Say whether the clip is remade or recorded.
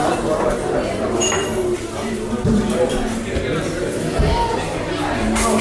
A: recorded